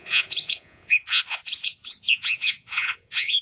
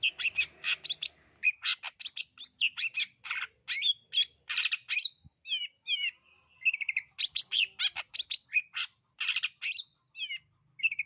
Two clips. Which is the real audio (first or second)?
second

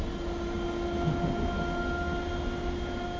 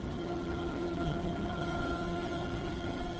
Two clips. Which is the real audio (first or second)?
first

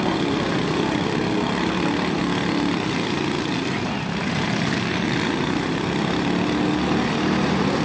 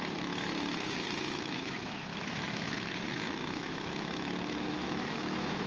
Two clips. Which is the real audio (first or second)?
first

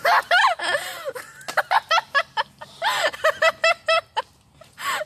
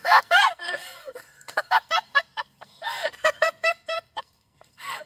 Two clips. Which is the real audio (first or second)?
first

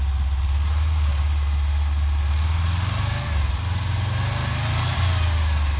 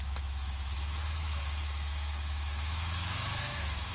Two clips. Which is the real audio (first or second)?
first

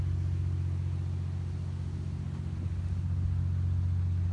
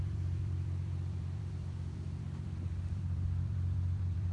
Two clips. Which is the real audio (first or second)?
first